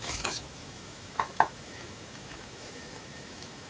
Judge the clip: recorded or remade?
remade